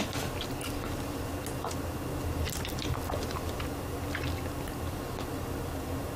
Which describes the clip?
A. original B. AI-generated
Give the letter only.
A